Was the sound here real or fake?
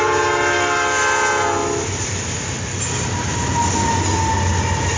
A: real